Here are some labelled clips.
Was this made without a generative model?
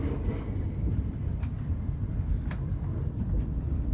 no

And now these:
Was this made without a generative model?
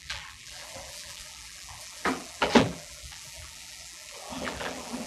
no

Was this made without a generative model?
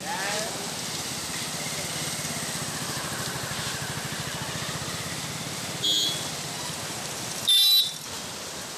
yes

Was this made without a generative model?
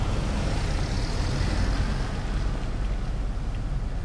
yes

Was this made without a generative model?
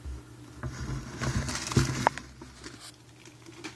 yes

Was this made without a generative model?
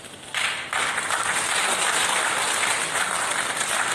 no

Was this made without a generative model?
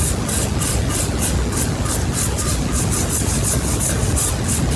yes